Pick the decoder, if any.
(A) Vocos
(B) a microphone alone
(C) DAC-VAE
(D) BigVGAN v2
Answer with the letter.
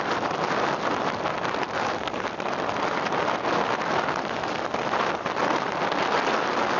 B